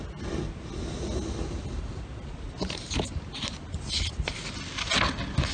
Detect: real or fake real